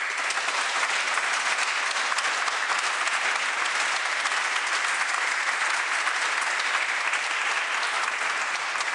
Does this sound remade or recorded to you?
recorded